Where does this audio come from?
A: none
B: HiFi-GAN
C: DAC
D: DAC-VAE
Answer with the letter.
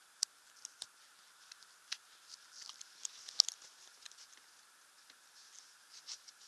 A